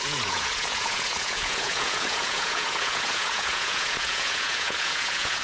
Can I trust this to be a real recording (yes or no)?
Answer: no